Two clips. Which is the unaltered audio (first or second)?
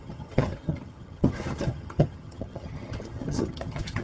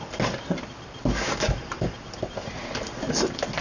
second